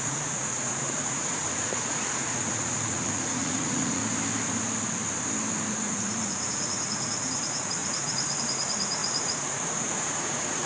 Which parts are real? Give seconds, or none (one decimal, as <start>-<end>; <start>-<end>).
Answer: 4.0-5.7